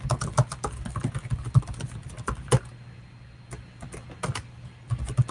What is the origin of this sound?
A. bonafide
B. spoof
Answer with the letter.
A